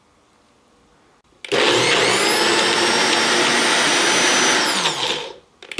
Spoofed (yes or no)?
no